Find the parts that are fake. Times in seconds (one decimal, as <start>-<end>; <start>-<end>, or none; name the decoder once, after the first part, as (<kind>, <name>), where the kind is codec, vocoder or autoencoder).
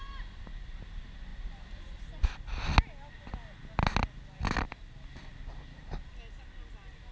none